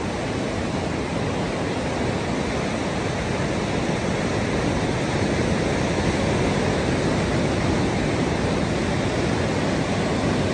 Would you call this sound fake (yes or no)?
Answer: no